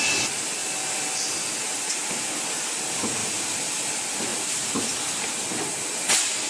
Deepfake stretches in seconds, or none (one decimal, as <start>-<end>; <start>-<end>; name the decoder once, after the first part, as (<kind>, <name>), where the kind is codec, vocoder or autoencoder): 3.2-3.8 (vocoder, BigVGAN v2); 4.3-5.3